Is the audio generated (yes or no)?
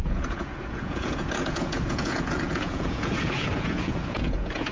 yes